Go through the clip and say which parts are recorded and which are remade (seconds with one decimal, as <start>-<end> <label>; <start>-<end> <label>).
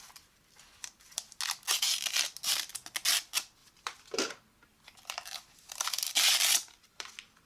0.0-3.6 recorded; 3.6-4.3 remade; 4.3-4.7 recorded; 4.7-7.1 remade; 7.1-7.5 recorded